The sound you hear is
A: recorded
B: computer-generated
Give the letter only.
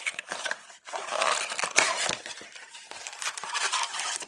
B